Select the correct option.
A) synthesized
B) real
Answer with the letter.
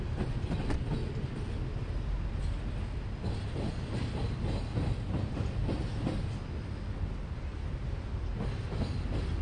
B